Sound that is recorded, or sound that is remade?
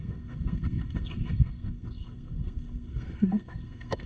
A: remade